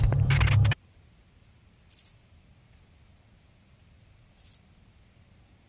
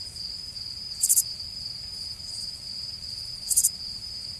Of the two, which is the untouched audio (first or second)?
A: first